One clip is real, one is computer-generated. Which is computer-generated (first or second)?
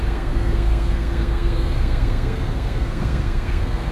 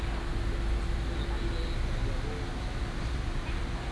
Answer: first